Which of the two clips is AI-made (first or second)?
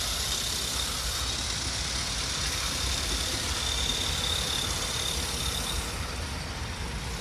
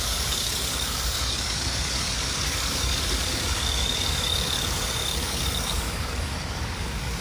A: second